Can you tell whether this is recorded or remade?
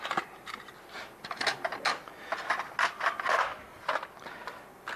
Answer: recorded